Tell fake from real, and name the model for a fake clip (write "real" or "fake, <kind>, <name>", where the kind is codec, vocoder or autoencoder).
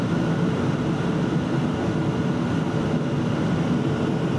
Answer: real